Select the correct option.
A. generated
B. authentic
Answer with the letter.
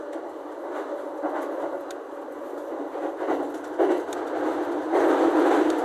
B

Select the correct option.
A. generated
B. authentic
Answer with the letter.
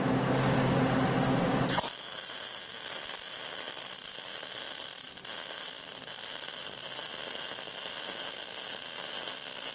B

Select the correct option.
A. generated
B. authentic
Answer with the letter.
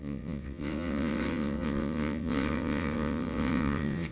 A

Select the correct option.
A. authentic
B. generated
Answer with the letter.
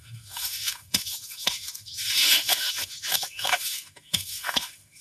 B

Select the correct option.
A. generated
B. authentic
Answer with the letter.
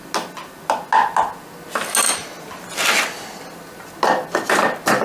B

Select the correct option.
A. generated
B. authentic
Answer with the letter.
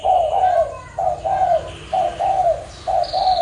B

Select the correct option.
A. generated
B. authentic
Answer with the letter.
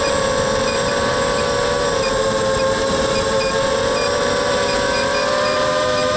A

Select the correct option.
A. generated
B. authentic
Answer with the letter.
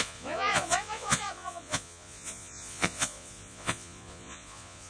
A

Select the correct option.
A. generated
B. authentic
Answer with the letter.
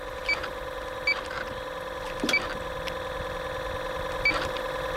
B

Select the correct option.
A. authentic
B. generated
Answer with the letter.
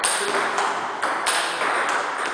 A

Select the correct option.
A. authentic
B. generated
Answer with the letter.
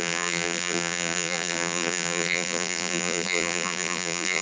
B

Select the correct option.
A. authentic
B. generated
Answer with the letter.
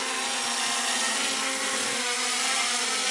A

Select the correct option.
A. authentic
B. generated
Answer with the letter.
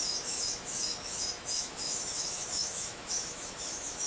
B